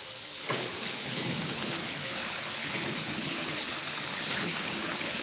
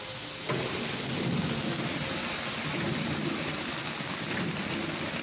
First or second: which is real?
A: second